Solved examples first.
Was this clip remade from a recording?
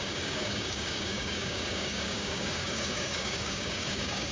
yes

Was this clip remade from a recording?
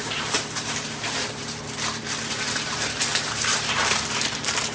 yes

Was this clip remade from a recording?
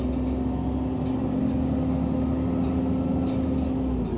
no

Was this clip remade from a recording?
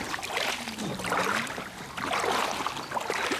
no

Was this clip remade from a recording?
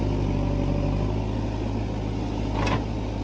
no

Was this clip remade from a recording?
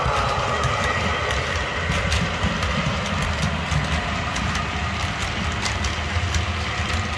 no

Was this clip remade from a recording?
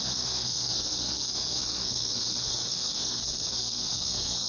yes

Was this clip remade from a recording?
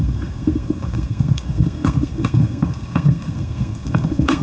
yes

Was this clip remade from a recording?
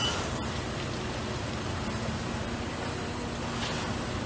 no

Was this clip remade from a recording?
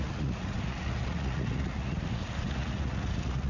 yes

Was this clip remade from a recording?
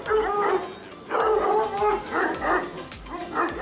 no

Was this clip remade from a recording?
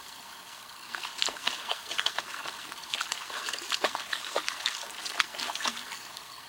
yes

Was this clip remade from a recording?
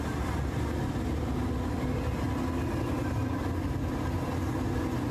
no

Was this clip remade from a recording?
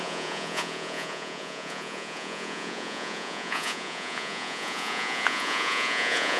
yes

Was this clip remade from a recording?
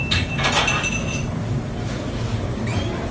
no